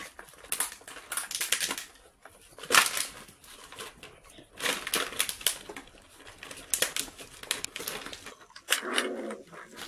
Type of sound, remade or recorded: recorded